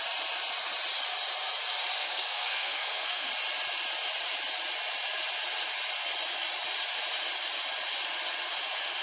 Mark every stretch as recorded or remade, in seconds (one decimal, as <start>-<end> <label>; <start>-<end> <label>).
0.0-2.0 recorded; 2.0-3.3 remade; 3.3-9.0 recorded